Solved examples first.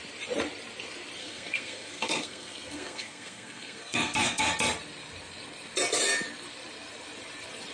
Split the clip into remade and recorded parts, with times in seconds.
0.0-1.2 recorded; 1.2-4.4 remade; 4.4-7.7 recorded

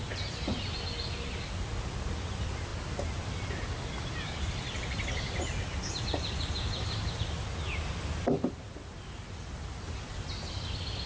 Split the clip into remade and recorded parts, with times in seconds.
0.0-11.1 recorded